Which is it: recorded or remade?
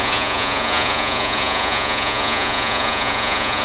remade